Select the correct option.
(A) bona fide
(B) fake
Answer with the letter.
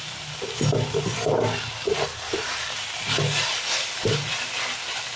A